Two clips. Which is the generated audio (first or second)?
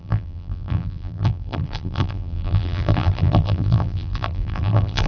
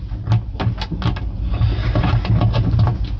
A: first